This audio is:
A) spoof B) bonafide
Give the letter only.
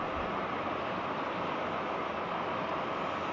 B